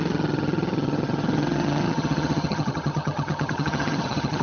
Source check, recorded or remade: remade